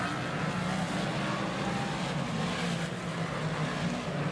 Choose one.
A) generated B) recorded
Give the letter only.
B